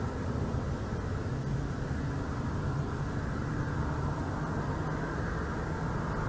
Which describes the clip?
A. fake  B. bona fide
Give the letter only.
B